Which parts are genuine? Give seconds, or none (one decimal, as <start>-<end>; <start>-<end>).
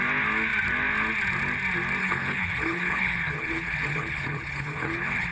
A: 0.0-2.0